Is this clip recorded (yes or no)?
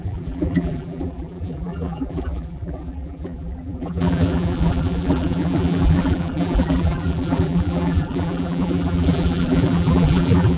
no